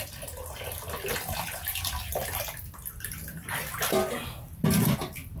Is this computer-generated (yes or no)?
no